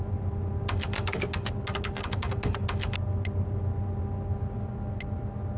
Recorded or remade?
recorded